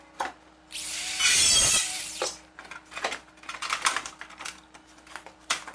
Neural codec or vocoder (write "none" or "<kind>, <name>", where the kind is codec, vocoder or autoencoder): vocoder, BigVGAN v2